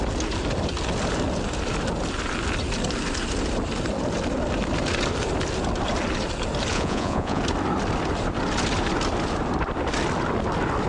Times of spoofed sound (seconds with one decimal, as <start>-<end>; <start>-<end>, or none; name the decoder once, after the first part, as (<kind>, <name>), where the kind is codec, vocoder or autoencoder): 6.7-7.4 (vocoder, Vocos)